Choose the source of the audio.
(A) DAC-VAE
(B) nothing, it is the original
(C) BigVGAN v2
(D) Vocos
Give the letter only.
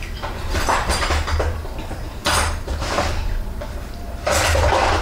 C